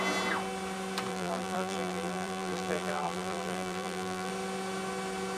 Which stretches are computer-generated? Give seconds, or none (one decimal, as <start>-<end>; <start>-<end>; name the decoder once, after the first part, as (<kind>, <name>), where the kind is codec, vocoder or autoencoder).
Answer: 1.1-4.3 (vocoder, BigVGAN v2)